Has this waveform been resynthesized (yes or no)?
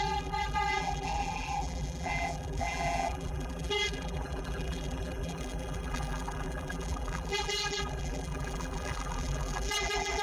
yes